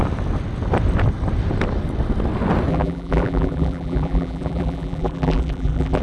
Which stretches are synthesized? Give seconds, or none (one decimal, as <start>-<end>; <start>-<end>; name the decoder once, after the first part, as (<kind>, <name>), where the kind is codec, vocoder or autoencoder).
2.7-6.0 (vocoder, BigVGAN v2)